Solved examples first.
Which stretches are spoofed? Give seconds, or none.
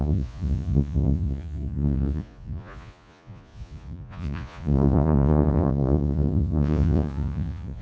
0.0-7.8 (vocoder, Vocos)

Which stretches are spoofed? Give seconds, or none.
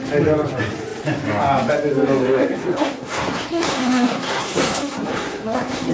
2.2-5.9 (codec, SNAC)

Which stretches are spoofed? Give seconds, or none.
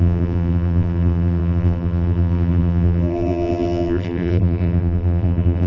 0.0-5.7 (vocoder, BigVGAN v2)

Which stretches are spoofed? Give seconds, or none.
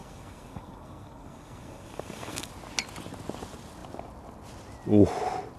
0.0-2.5 (codec, SNAC)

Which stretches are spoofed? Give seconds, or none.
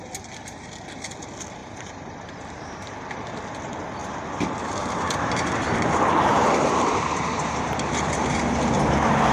1.6-2.9 (vocoder, BigVGAN v2); 4.0-8.5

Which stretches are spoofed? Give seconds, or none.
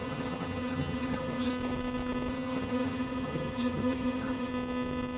0.0-1.5 (vocoder, HiFi-GAN); 2.3-4.5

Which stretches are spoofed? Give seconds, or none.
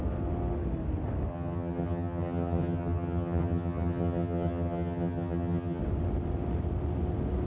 1.3-5.8 (vocoder, HiFi-GAN)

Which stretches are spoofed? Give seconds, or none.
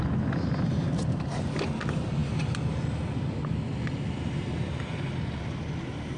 none